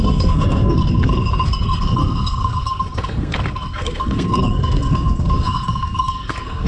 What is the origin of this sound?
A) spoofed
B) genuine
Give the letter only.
A